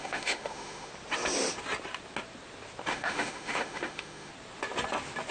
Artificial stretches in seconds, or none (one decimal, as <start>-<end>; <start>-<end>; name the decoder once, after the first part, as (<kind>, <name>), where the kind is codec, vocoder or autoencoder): 0.0-0.9 (autoencoder, DAC-VAE); 2.9-4.3